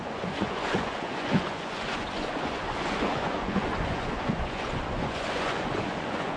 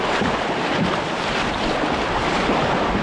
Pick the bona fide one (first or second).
second